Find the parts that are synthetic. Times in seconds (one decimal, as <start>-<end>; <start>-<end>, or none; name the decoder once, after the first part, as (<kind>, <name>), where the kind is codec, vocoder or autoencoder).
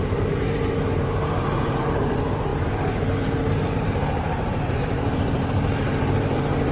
0.0-6.7 (vocoder, BigVGAN v2)